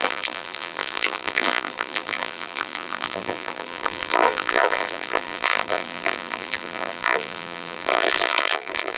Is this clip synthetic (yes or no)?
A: yes